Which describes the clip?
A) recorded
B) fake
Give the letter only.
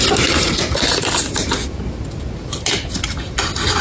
A